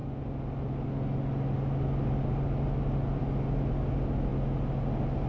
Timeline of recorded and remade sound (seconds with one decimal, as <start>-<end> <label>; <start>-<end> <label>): 0.0-5.3 recorded